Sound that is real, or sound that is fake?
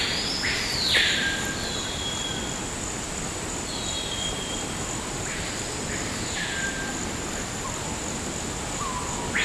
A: real